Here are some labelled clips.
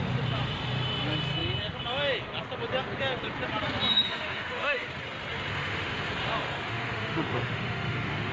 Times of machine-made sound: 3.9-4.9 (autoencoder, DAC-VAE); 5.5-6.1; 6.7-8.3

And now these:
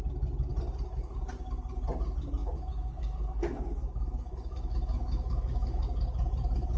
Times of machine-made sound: 2.4-5.8 (autoencoder, DAC-VAE)